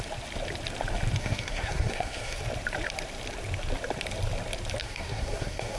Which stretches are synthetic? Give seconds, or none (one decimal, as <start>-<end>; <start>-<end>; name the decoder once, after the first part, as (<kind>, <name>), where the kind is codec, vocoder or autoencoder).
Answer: 1.2-2.4 (codec, SNAC); 4.8-5.8